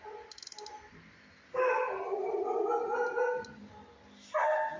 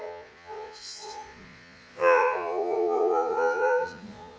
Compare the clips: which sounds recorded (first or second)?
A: first